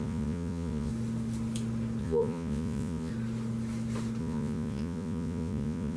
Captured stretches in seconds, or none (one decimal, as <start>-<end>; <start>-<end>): 0.9-2.0; 3.1-4.2